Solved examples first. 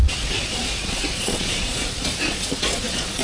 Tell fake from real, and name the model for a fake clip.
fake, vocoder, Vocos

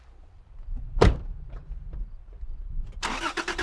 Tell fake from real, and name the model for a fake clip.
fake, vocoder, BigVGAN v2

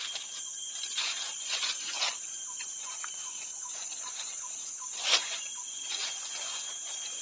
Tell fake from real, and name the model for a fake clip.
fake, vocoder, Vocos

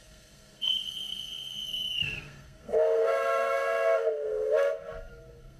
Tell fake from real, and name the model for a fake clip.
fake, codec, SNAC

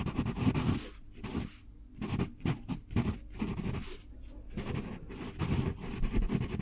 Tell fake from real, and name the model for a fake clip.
real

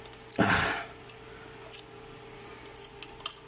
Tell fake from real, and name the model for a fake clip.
real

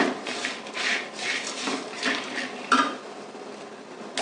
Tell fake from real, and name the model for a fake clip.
real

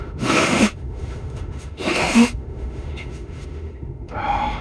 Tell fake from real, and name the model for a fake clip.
fake, autoencoder, DAC-VAE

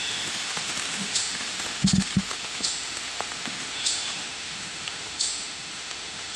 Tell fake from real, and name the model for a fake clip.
fake, autoencoder, DAC-VAE